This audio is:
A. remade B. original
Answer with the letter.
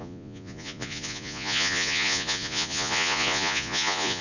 A